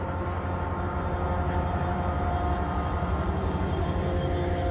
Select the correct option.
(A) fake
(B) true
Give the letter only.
B